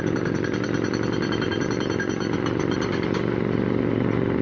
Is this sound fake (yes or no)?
no